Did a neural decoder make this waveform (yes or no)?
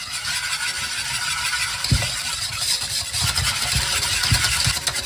no